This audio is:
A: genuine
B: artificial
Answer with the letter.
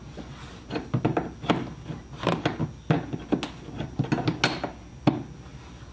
A